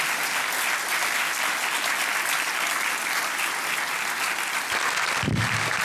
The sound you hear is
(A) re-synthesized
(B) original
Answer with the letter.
B